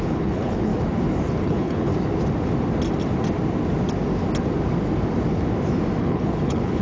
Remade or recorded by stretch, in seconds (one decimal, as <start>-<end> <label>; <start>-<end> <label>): 0.0-0.7 remade; 0.7-1.4 recorded; 1.4-1.9 remade; 1.9-6.0 recorded; 6.0-6.8 remade